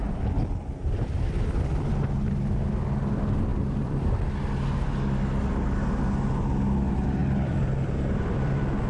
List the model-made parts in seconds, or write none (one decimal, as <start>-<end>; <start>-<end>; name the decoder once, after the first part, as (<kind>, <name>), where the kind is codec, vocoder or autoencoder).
0.0-1.9 (vocoder, BigVGAN v2); 3.5-4.1; 7.2-8.9